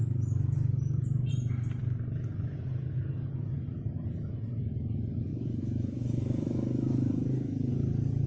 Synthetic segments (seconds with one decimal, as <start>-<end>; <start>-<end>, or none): 5.3-7.7

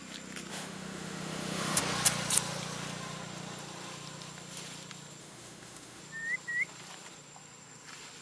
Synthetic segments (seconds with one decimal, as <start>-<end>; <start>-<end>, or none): 0.5-1.8; 5.2-6.0

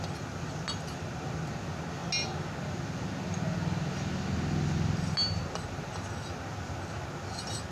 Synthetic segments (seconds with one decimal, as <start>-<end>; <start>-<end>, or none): none

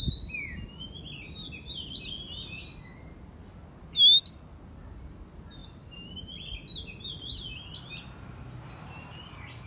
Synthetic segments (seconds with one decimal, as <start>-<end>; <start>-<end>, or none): none

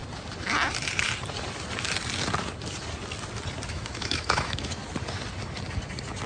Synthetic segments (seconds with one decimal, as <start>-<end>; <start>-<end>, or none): 3.7-4.8

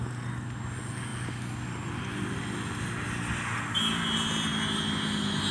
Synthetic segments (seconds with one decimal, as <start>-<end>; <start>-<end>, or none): none

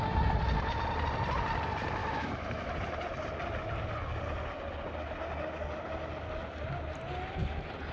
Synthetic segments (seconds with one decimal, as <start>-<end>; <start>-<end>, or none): 2.0-2.7